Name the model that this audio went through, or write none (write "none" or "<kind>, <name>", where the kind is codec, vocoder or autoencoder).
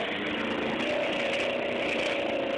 vocoder, BigVGAN v2